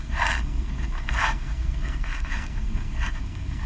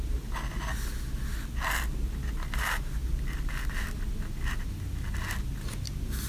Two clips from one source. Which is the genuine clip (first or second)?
second